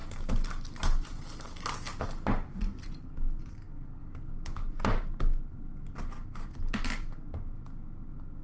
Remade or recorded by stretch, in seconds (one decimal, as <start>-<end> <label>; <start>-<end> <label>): 0.0-8.4 recorded